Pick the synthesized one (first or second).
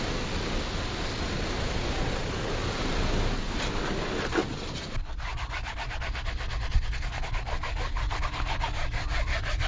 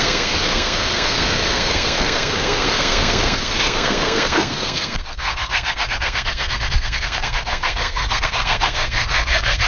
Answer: second